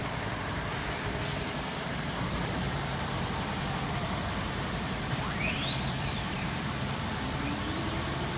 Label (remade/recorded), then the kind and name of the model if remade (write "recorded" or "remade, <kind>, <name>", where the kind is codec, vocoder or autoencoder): remade, vocoder, BigVGAN v2